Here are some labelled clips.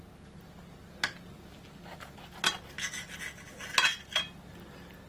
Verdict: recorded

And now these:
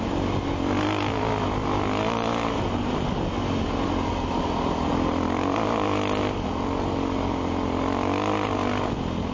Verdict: recorded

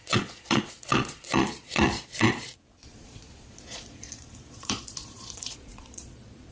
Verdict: remade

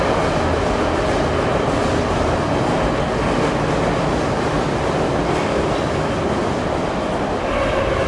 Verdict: recorded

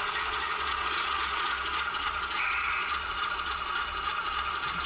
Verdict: remade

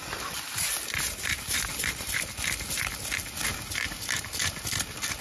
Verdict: recorded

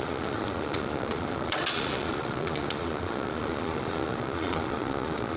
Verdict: remade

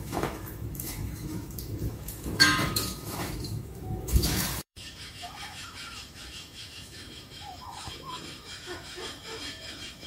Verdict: remade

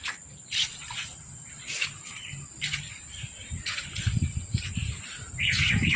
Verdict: remade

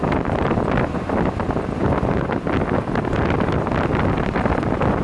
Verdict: recorded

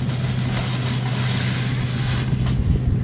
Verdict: recorded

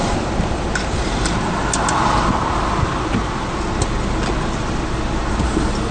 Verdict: recorded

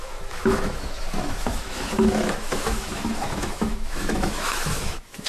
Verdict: remade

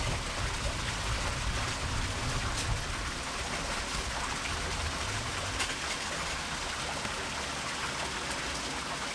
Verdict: recorded